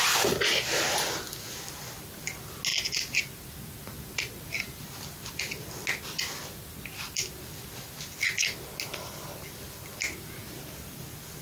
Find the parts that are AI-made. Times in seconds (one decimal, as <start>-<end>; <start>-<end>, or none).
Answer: none